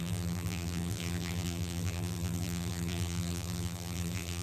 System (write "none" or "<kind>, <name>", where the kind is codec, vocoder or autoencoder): vocoder, BigVGAN v2